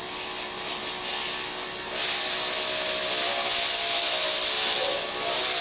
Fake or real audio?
real